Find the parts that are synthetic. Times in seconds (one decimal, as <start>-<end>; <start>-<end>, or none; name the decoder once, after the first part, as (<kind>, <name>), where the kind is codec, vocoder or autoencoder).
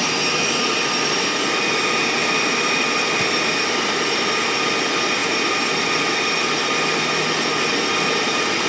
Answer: none